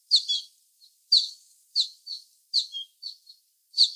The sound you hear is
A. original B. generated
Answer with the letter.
A